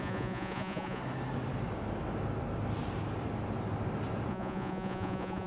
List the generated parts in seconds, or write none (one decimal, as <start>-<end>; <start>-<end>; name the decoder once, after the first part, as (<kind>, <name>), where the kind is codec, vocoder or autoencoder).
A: 0.0-1.0 (vocoder, Vocos); 4.3-5.5